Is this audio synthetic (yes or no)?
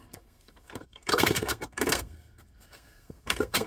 yes